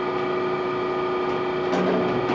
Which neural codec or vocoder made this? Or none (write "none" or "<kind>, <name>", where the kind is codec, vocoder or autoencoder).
none